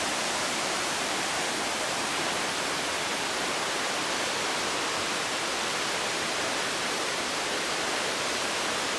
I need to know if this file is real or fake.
fake